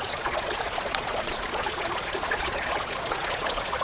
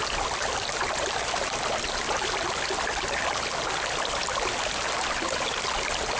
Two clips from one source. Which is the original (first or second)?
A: second